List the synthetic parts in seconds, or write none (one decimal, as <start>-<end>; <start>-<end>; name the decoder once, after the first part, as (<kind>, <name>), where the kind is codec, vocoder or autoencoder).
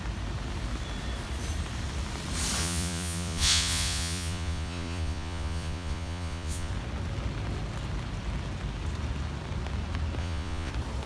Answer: 2.6-6.7 (vocoder, Vocos); 10.2-10.7